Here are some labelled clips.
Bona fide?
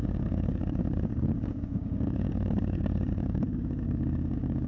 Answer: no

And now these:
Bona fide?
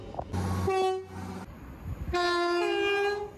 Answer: yes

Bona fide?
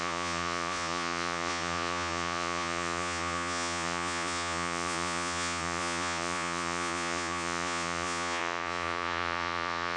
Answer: no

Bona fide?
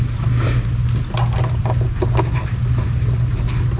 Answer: yes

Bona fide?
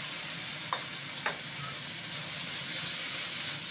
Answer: yes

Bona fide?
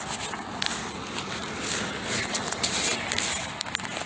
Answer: yes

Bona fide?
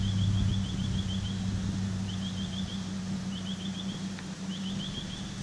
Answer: yes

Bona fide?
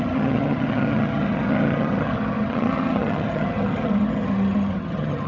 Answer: no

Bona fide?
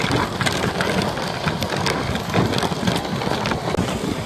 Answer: yes